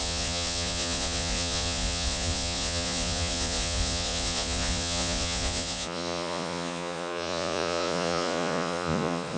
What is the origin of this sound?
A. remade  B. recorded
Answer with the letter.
A